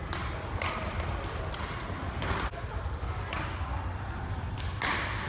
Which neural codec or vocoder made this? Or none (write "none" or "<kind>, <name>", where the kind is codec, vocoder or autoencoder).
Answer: none